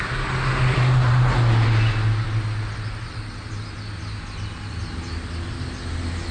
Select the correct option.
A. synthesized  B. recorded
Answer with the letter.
B